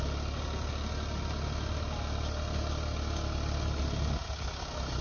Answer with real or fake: real